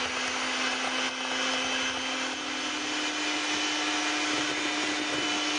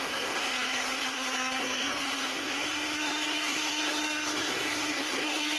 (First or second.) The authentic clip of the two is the first